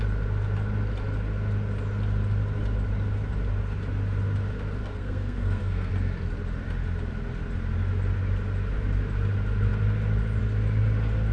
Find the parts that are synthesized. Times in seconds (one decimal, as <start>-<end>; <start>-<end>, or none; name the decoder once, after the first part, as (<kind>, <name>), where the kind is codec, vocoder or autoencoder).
4.8-5.9 (codec, SNAC)